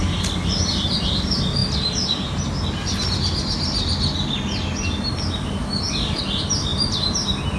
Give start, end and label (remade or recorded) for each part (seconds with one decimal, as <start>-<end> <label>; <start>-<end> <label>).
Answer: 0.0-7.6 recorded

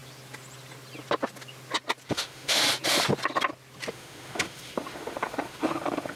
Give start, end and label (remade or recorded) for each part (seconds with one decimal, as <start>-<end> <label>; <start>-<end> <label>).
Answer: 0.0-2.1 recorded; 2.1-2.6 remade; 2.6-3.9 recorded; 3.9-6.2 remade